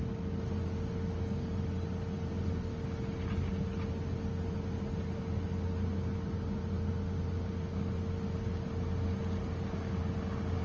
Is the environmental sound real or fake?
real